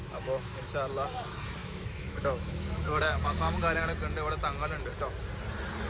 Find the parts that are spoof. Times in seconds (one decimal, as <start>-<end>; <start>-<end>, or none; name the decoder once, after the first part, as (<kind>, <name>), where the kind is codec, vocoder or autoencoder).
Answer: 0.0-0.6 (autoencoder, DAC-VAE); 1.6-3.6